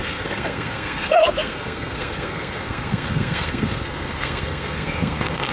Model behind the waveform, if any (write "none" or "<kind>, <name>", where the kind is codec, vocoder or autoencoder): codec, SNAC